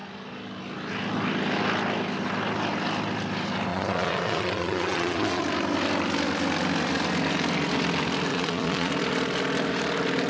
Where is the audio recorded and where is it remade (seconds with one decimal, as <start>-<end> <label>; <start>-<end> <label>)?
0.0-3.7 recorded; 3.7-5.4 remade; 5.4-8.3 recorded; 8.3-8.9 remade; 8.9-10.3 recorded